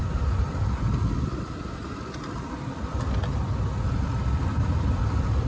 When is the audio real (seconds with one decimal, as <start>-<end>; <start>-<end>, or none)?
0.0-5.5